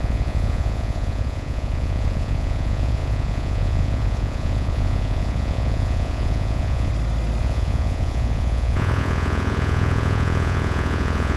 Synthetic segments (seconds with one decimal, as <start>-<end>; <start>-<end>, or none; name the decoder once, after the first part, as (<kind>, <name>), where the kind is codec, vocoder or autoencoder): 0.0-6.9 (vocoder, Vocos); 7.4-11.4